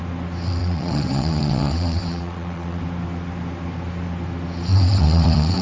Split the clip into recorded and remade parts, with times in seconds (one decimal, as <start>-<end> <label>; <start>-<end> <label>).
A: 0.0-0.6 recorded; 0.6-2.8 remade; 2.8-4.7 recorded; 4.7-5.6 remade